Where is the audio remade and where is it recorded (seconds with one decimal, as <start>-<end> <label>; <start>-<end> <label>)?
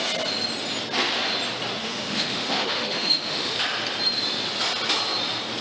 0.0-1.8 recorded; 1.8-3.6 remade; 3.6-5.6 recorded